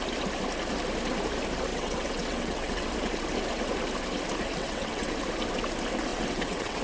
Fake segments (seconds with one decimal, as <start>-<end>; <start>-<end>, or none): 1.7-2.9; 4.6-5.1; 6.1-6.8

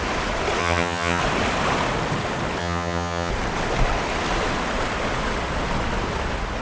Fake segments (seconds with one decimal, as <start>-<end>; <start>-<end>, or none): 0.6-1.2; 2.6-3.3

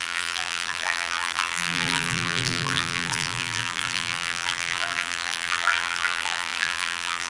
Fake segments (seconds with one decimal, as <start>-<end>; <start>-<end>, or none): 0.0-7.3

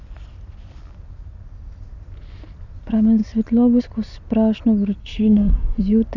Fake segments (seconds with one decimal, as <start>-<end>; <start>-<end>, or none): 5.0-5.8

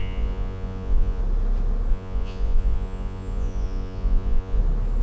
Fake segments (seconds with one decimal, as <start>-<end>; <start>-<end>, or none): 0.0-1.2; 1.9-4.6